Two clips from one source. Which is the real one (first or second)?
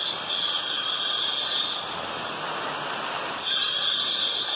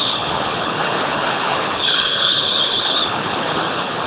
first